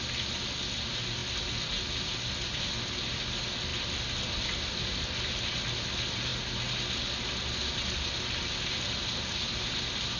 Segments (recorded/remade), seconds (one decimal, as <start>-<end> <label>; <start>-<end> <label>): 0.0-10.2 recorded